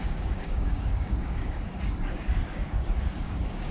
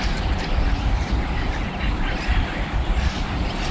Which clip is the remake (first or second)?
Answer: first